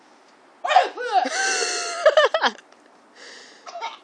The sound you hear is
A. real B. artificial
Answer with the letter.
A